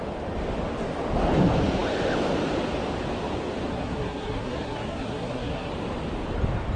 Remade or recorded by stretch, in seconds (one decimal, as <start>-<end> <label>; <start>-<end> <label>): 0.0-3.7 recorded; 3.7-5.7 remade; 5.7-6.8 recorded